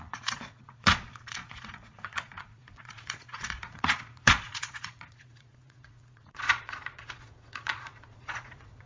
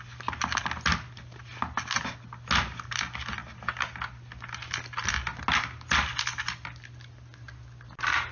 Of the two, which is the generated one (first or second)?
first